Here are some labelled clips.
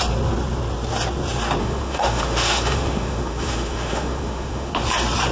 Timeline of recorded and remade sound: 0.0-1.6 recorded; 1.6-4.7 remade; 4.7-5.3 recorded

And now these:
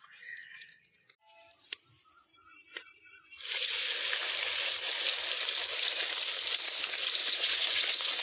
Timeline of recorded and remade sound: 0.0-7.2 recorded; 7.2-8.2 remade